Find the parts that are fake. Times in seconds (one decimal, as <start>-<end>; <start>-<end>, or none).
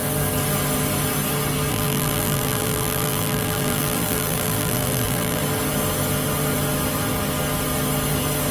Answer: 1.7-5.4